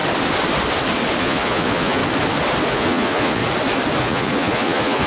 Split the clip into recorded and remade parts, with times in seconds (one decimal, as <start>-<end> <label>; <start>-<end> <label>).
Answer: 0.0-1.2 recorded; 1.2-2.0 remade; 2.0-2.7 recorded; 2.7-3.4 remade; 3.4-4.0 recorded; 4.0-5.1 remade